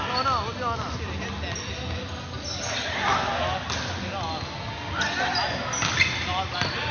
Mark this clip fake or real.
real